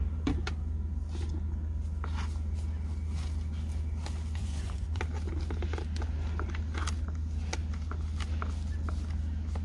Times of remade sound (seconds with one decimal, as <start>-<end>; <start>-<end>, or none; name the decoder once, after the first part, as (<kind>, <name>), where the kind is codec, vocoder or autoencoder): 4.4-5.0 (vocoder, Vocos)